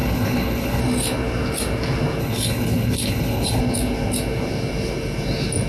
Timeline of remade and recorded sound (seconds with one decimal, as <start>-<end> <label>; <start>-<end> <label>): 0.0-0.8 remade; 0.8-2.2 recorded; 2.2-3.6 remade; 3.6-5.7 recorded